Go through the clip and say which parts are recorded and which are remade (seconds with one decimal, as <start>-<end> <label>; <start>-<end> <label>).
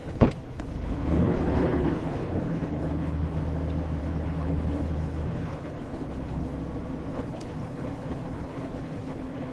0.0-3.4 remade; 3.4-4.0 recorded; 4.0-6.5 remade; 6.5-7.1 recorded; 7.1-9.5 remade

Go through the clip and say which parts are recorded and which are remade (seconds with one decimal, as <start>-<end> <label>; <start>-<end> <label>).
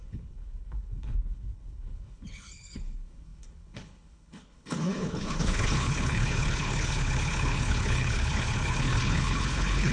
0.0-9.9 remade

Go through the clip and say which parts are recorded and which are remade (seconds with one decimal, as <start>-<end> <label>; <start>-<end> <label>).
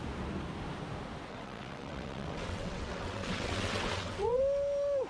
0.0-1.3 recorded; 1.3-4.4 remade; 4.4-5.1 recorded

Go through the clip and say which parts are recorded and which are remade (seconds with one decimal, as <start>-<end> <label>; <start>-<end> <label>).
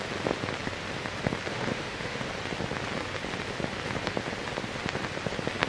0.0-1.5 recorded; 1.5-2.3 remade; 2.3-5.7 recorded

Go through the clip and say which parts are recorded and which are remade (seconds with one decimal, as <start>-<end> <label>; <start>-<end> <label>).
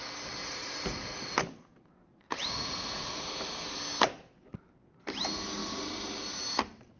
0.0-0.4 recorded; 0.4-1.2 remade; 1.2-2.0 recorded; 2.0-3.1 remade; 3.1-7.0 recorded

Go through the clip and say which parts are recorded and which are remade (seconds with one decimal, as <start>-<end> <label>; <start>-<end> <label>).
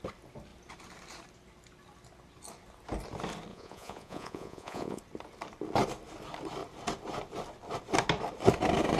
0.0-3.5 recorded; 3.5-5.0 remade; 5.0-9.0 recorded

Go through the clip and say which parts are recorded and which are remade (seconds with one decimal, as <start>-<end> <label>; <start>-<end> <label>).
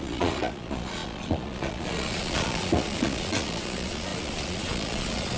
0.0-5.4 remade